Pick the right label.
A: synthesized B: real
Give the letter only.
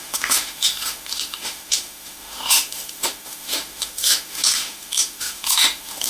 A